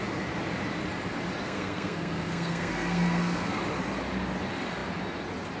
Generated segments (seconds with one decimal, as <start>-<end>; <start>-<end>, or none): 1.4-3.6